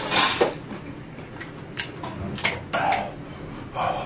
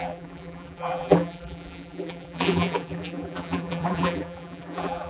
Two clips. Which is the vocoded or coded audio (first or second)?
second